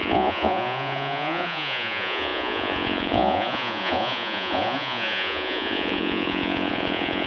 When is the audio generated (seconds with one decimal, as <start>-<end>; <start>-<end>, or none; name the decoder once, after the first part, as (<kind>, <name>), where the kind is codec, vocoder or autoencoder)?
0.0-7.3 (vocoder, Vocos)